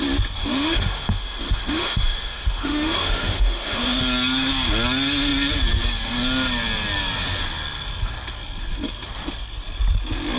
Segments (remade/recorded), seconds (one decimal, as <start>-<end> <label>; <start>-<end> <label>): 0.0-0.4 recorded; 0.4-4.0 remade; 4.0-10.4 recorded